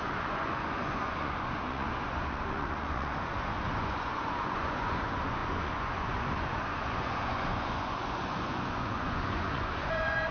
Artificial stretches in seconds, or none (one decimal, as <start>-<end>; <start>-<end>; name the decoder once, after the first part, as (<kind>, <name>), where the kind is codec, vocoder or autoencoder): 0.0-10.3 (vocoder, Vocos)